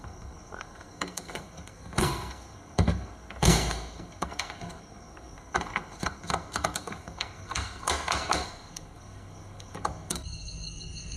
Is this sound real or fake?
fake